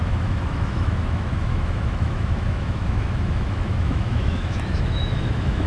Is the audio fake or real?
fake